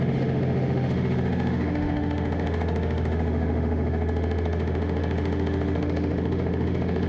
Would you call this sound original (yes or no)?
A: no